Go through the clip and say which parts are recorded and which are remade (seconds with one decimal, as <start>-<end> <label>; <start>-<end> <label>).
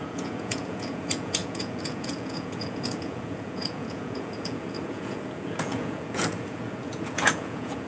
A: 0.0-7.9 remade